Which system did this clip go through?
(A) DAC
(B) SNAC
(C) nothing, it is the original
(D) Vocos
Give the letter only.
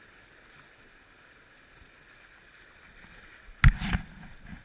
C